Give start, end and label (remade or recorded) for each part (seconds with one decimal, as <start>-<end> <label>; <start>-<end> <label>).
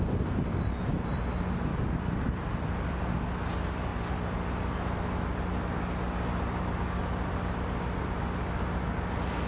0.0-1.7 recorded; 1.7-3.0 remade; 3.0-9.5 recorded